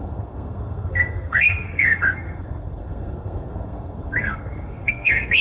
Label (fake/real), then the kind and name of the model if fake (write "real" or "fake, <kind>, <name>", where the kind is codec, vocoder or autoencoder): fake, codec, SNAC